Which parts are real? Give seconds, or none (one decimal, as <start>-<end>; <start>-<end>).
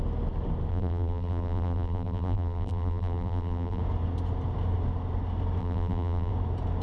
0.0-0.7; 3.8-5.6; 6.3-6.8